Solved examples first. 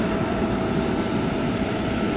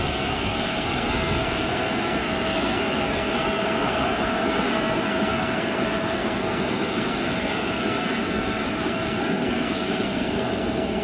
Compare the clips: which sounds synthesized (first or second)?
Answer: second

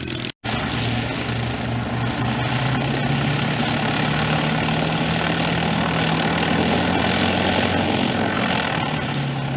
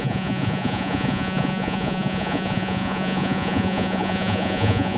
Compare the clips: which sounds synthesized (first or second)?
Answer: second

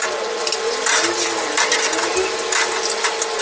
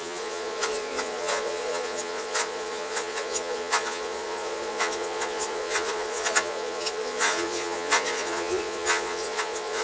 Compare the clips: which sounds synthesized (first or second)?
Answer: second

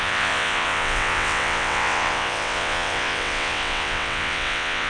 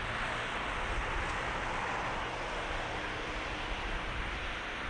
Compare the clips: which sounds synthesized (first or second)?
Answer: first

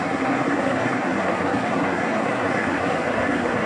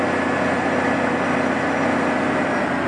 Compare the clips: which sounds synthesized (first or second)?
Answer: first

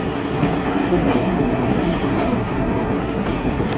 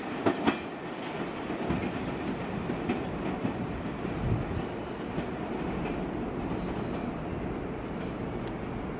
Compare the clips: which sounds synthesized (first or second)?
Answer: first